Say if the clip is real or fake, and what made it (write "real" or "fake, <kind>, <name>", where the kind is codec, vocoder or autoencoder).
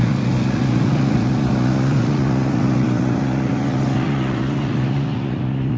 fake, vocoder, Vocos